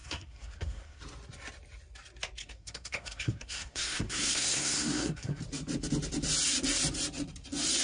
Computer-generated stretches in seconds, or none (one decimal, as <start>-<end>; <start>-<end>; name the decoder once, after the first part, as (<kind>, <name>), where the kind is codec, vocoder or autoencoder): 0.0-1.0 (codec, SNAC); 2.4-5.4